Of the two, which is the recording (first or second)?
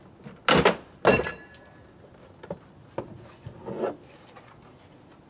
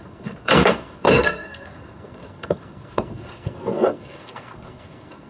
first